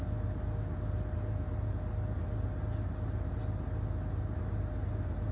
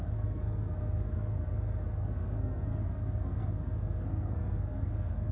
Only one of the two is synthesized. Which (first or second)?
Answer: second